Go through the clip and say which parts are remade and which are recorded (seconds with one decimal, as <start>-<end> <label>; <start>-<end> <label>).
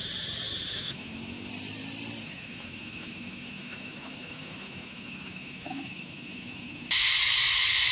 0.0-0.7 recorded; 0.7-1.5 remade; 1.5-2.2 recorded; 2.2-6.9 remade; 6.9-7.9 recorded